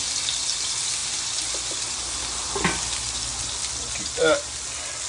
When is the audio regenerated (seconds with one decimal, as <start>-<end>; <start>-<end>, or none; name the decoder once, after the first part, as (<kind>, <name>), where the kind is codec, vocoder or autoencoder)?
none